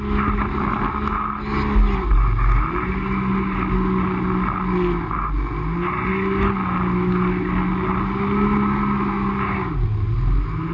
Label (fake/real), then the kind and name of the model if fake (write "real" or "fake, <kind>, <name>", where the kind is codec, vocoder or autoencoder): real